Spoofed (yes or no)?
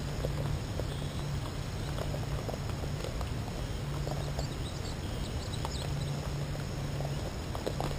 no